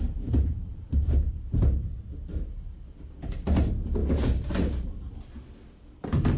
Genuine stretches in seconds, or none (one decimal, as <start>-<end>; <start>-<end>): 0.0-0.5; 1.9-4.0; 5.3-6.4